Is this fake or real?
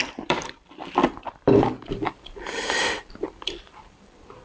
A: fake